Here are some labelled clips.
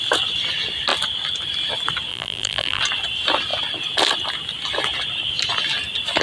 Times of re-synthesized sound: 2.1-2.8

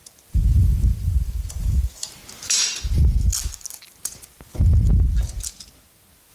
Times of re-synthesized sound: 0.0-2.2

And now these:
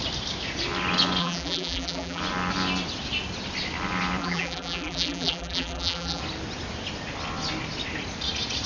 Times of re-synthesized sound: 1.2-2.2; 4.2-6.2

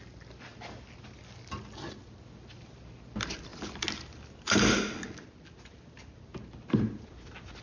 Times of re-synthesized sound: none